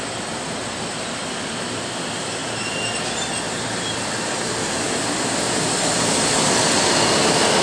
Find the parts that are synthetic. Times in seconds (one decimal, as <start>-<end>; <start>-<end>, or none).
0.0-2.4; 4.2-7.6